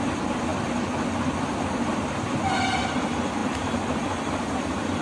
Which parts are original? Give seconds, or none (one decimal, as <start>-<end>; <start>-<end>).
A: 0.0-5.0